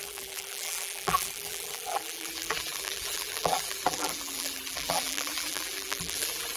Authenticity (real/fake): fake